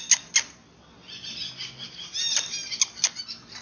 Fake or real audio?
real